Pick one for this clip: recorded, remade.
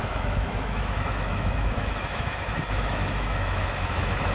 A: remade